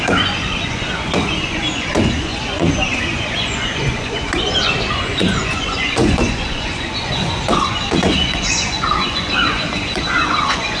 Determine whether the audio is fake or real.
fake